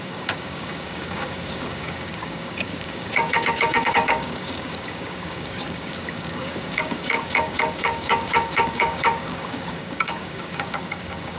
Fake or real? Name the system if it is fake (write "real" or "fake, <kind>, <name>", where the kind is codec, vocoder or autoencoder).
fake, codec, DAC